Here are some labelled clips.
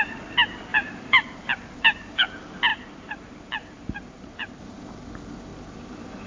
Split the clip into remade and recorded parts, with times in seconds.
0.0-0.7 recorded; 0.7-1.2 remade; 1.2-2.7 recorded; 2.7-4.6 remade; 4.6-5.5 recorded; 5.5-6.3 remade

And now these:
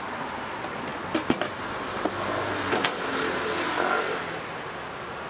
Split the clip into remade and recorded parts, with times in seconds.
0.0-5.3 recorded

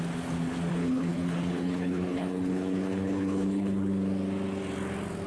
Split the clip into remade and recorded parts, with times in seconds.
0.0-0.7 recorded; 0.7-3.9 remade; 3.9-5.3 recorded

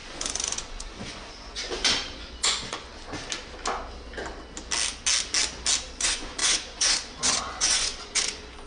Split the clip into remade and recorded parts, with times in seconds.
0.0-2.9 remade; 2.9-6.0 recorded; 6.0-8.7 remade